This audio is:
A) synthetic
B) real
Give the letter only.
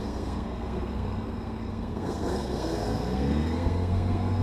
A